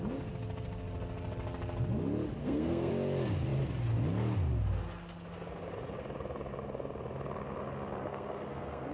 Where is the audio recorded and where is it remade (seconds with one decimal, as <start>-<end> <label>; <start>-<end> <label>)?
0.0-2.4 recorded; 2.4-2.9 remade; 2.9-8.0 recorded; 8.0-8.9 remade